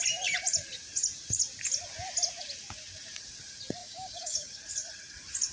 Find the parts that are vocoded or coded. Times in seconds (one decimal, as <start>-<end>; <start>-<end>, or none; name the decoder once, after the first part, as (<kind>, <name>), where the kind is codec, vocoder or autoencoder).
3.8-4.6 (codec, DAC)